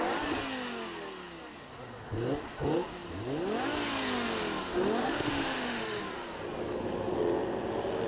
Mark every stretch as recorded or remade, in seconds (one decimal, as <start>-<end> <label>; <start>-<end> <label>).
0.0-5.0 recorded; 5.0-6.0 remade; 6.0-8.1 recorded